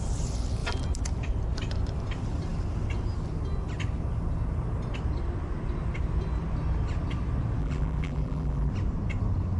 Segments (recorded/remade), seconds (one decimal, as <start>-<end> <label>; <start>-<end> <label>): 0.0-7.6 recorded; 7.6-8.7 remade; 8.7-9.6 recorded